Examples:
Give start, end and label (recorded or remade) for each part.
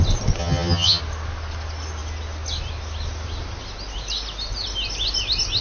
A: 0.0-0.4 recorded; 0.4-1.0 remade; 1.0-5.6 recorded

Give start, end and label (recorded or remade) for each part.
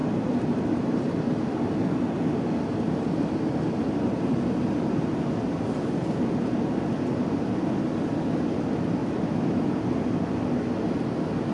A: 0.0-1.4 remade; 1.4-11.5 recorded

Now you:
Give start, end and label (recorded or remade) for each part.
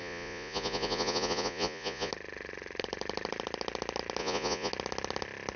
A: 0.0-2.1 remade; 2.1-4.2 recorded; 4.2-4.7 remade; 4.7-5.6 recorded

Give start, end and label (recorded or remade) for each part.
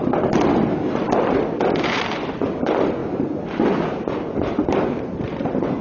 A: 0.0-5.8 recorded